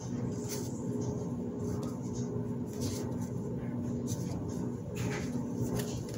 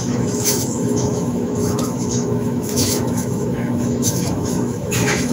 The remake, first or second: second